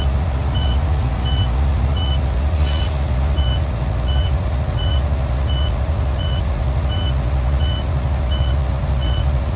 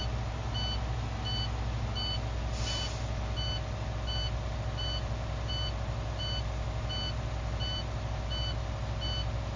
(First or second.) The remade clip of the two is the first